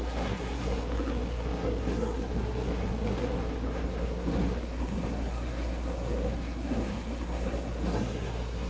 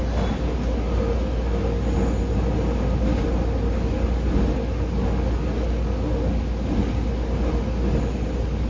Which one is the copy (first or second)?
first